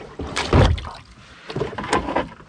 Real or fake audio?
real